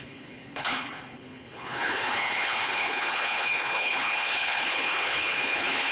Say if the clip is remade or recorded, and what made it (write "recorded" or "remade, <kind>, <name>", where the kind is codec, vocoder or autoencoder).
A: remade, codec, HILCodec